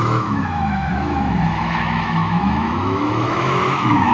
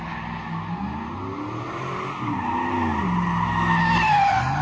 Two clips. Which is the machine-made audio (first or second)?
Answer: first